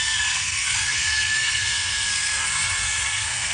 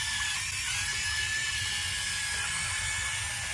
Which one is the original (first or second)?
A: second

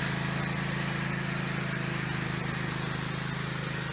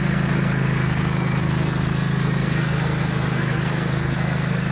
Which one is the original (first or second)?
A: first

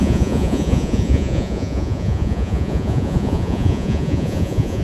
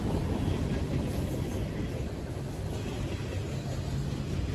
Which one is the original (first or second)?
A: second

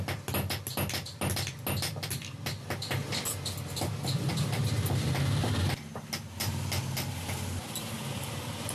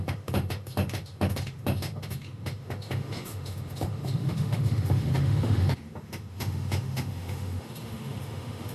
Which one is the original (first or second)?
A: first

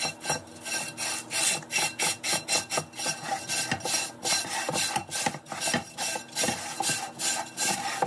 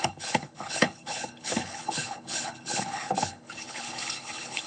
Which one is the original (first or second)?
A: first